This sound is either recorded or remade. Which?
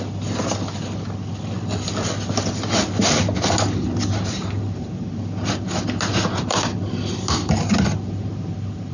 recorded